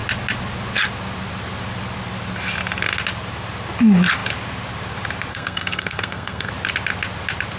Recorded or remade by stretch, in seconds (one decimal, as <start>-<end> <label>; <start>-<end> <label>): 0.0-5.3 recorded; 5.3-6.5 remade; 6.5-7.6 recorded